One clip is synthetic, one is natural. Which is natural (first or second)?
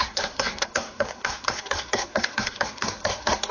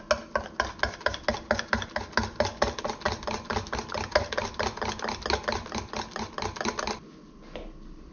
second